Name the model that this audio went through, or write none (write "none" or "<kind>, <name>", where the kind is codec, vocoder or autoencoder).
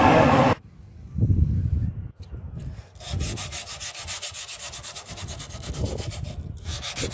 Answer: none